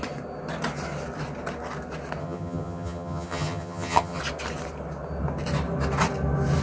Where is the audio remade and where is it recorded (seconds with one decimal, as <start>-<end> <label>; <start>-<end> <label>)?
0.0-2.2 recorded; 2.2-4.2 remade; 4.2-6.6 recorded